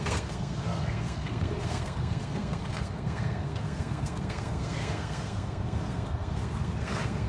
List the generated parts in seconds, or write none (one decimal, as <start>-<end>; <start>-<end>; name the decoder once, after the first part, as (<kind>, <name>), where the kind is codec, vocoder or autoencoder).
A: 0.0-7.3 (codec, SNAC)